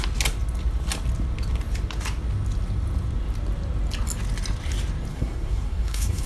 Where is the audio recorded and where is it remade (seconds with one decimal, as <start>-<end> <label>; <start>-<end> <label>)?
0.0-5.1 recorded; 5.1-6.3 remade